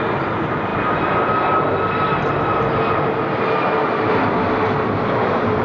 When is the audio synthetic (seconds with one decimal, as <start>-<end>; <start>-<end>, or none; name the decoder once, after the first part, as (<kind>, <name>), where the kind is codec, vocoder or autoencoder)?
none